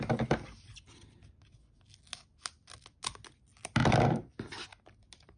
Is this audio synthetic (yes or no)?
no